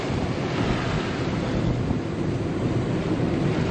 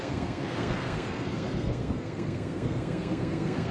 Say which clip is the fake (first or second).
second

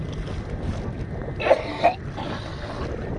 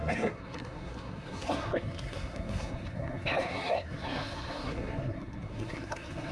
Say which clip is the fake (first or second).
second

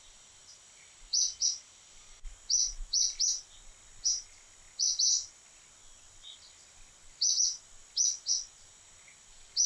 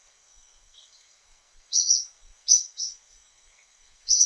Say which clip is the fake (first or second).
second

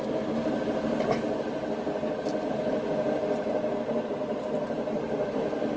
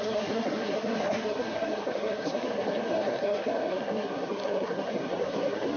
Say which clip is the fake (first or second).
second